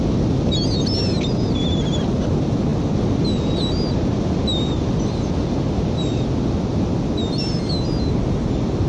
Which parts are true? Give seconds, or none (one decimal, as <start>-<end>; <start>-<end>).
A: 0.0-8.9